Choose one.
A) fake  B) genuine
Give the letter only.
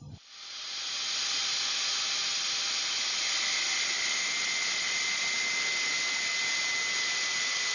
B